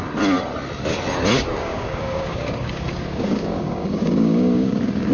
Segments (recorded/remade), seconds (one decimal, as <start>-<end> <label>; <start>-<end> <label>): 0.0-1.6 recorded; 1.6-5.1 remade